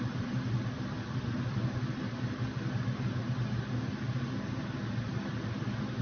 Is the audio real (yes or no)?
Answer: yes